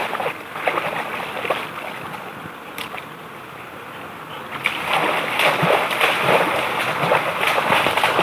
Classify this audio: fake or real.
real